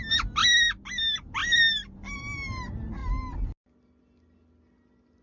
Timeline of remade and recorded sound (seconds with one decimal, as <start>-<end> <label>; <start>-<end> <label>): 0.0-5.2 recorded